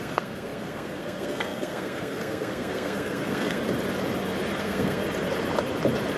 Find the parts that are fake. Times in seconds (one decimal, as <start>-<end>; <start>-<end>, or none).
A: 0.0-3.6; 4.6-5.0